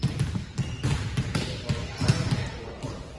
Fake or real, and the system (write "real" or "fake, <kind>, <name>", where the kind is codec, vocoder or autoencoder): real